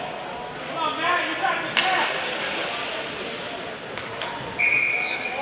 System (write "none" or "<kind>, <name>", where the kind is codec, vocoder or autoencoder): none